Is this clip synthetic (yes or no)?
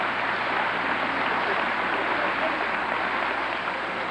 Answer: no